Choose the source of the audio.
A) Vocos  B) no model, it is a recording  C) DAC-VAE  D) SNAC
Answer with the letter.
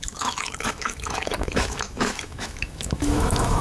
C